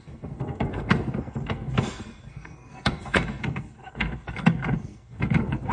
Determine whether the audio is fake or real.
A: fake